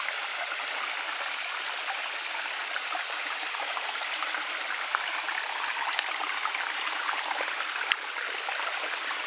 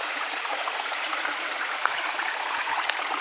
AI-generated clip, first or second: second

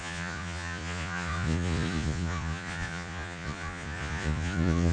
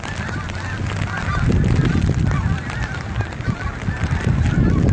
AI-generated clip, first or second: first